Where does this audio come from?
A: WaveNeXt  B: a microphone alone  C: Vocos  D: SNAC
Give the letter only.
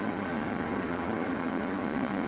C